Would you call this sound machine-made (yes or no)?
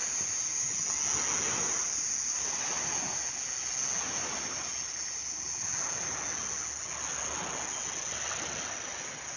no